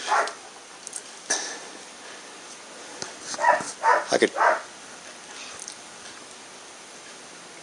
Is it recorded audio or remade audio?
recorded